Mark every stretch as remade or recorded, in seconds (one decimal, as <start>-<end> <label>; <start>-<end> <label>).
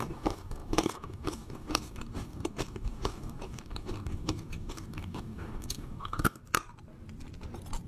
0.0-6.4 remade; 6.4-7.9 recorded